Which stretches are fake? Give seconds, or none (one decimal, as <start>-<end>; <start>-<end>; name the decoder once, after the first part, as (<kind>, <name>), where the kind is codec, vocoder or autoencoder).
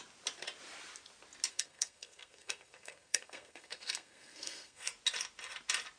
1.5-4.9 (codec, SNAC)